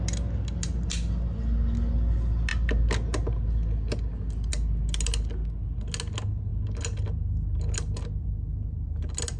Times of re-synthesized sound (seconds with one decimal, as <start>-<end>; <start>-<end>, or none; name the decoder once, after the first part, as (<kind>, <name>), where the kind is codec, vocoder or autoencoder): none